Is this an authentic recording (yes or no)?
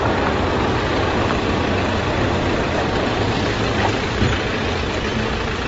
yes